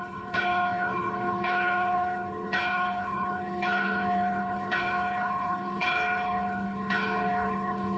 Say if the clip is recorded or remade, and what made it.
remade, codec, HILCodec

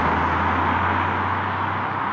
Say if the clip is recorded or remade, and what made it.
recorded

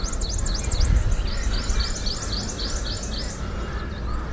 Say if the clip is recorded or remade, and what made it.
recorded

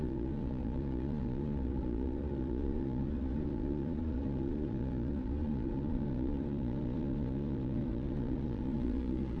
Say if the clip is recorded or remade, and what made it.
remade, vocoder, Vocos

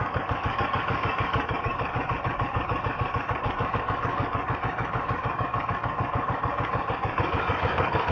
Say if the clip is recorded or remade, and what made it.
remade, codec, DAC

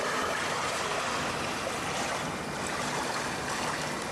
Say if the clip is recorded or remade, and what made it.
recorded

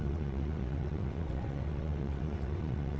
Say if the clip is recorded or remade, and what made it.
remade, vocoder, WaveNeXt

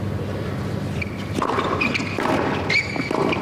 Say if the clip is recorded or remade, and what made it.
recorded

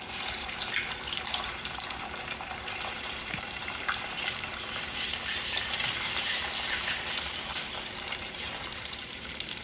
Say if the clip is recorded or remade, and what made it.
remade, vocoder, BigVGAN v2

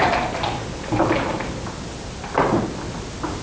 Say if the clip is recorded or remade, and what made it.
recorded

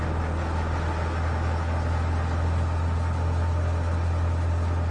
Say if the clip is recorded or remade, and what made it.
recorded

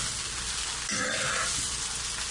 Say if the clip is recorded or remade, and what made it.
recorded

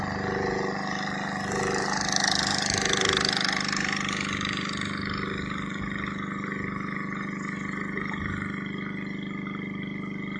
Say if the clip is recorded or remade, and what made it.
recorded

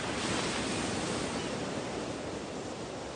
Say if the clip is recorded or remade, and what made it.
recorded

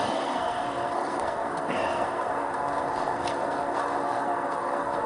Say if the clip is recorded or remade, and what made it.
remade, codec, SNAC